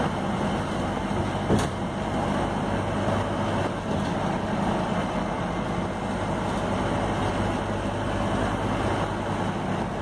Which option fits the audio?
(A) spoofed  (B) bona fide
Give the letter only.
B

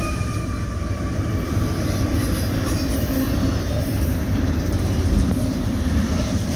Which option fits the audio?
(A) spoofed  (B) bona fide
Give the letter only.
A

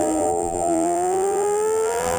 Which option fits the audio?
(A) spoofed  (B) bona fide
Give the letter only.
A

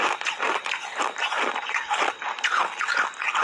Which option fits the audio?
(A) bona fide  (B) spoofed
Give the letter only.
A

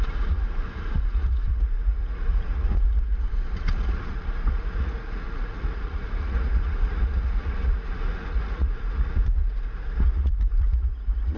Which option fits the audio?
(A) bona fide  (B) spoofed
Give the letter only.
B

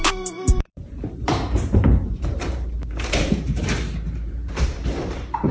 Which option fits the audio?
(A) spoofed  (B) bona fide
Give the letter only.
A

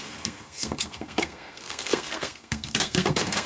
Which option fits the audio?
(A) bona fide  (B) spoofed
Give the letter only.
B